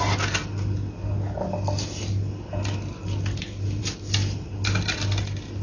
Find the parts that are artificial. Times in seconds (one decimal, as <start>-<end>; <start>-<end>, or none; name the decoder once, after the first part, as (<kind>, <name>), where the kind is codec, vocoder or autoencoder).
none